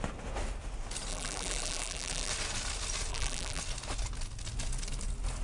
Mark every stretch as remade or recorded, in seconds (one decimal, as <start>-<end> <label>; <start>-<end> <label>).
0.0-1.1 recorded; 1.1-2.3 remade; 2.3-3.1 recorded; 3.1-3.6 remade; 3.6-5.4 recorded